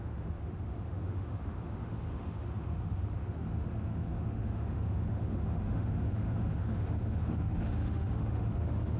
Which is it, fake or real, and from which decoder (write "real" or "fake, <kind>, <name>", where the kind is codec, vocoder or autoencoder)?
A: fake, autoencoder, DAC-VAE